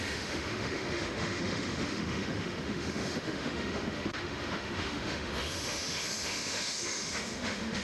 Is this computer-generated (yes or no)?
yes